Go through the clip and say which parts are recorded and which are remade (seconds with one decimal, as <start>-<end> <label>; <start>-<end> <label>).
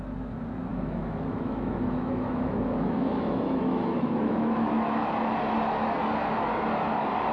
0.0-0.7 recorded; 0.7-5.1 remade; 5.1-7.3 recorded